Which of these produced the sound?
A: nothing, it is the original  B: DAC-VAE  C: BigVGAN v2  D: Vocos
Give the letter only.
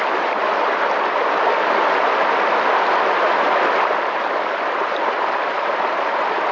A